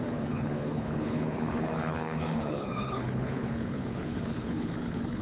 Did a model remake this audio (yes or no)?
yes